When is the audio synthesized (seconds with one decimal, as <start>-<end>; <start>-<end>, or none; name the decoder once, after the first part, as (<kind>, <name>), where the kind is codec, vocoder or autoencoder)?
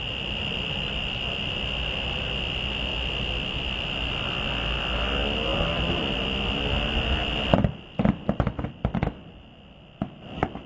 none